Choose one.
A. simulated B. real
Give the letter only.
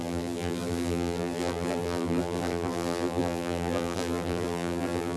A